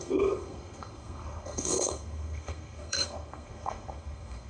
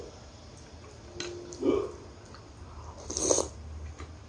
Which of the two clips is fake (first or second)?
first